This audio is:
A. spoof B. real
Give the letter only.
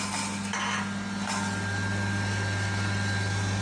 B